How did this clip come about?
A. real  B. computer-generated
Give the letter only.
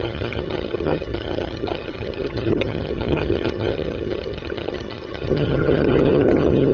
B